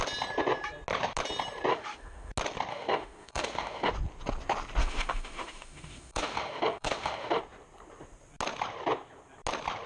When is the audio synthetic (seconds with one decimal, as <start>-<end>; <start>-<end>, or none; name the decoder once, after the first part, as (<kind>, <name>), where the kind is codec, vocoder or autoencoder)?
1.7-2.3 (autoencoder, DAC-VAE); 2.7-3.9; 4.8-7.4